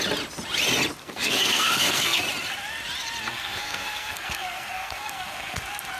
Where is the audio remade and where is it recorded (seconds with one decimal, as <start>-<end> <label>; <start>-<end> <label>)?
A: 0.0-1.0 recorded; 1.0-2.2 remade; 2.2-3.3 recorded; 3.3-5.6 remade; 5.6-6.0 recorded